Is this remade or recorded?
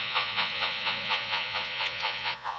remade